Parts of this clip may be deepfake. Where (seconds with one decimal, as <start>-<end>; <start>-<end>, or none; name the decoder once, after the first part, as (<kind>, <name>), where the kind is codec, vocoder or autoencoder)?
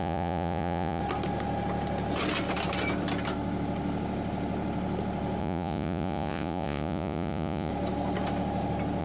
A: 0.0-1.0 (vocoder, Vocos); 5.4-7.7